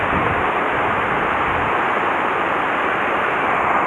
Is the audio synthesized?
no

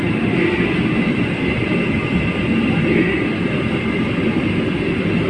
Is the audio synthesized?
no